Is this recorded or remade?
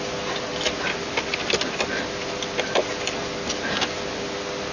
recorded